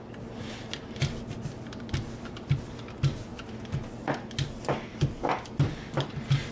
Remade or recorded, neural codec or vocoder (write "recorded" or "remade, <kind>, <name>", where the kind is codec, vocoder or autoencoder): recorded